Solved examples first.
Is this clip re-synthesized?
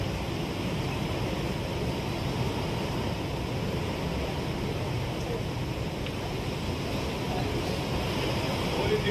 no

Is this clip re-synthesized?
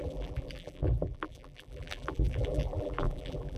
yes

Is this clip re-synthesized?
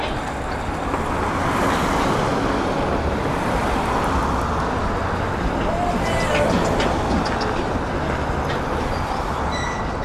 no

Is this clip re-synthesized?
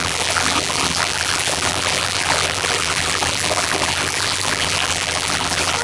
yes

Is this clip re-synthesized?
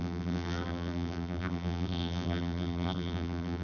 yes